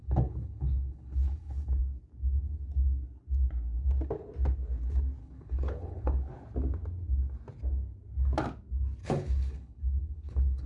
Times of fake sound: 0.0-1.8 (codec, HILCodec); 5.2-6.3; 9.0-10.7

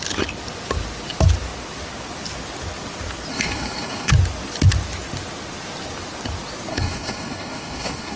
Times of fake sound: 3.3-4.1 (codec, HILCodec); 6.7-8.2